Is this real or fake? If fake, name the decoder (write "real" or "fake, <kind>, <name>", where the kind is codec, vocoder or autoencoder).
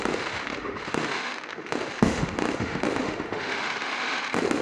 fake, autoencoder, DAC-VAE